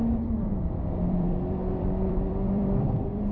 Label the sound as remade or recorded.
remade